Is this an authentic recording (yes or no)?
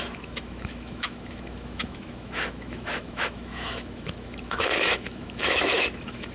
no